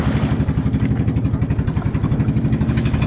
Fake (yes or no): no